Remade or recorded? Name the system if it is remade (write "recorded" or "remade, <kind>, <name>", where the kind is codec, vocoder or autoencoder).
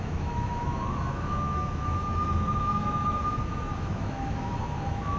remade, autoencoder, DAC-VAE